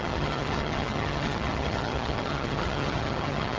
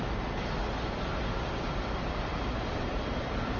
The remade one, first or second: first